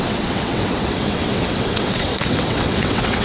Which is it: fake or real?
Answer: fake